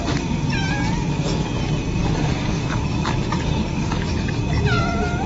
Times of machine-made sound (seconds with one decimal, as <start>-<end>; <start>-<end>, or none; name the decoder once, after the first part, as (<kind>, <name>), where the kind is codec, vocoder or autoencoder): 2.0-4.1 (codec, DAC)